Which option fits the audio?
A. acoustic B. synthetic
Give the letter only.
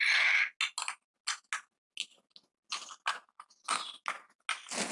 A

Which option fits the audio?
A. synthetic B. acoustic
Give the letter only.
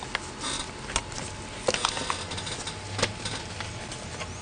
B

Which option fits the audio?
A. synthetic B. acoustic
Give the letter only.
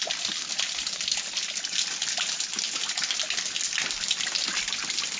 B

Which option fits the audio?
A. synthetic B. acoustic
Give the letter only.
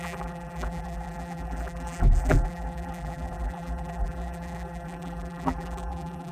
A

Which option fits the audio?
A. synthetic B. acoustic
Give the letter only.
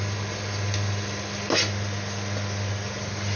B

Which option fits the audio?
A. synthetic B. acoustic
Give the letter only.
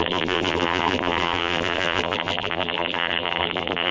A